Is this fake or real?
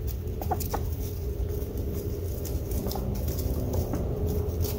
real